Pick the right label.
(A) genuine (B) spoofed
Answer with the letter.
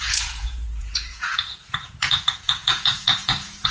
B